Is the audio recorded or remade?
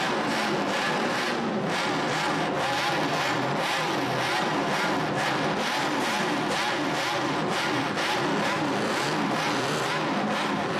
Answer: recorded